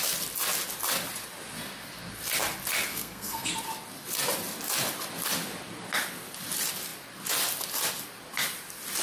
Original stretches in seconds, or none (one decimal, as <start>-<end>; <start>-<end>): 0.0-2.9; 3.5-9.0

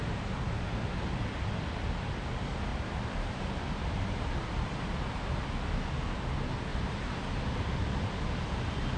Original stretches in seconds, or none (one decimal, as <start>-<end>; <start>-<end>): 0.0-2.7; 3.4-6.7; 7.3-9.0

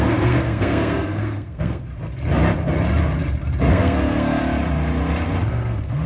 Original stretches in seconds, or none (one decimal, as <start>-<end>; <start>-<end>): 1.9-3.7; 4.4-5.5